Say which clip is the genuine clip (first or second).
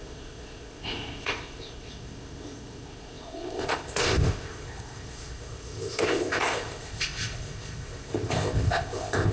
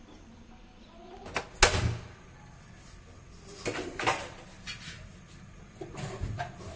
second